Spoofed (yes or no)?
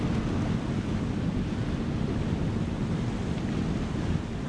no